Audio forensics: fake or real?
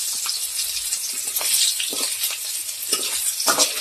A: real